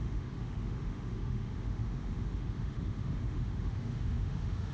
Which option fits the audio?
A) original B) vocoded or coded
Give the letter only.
B